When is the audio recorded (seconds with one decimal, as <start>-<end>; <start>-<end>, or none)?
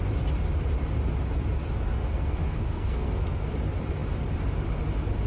0.0-1.9; 3.5-5.3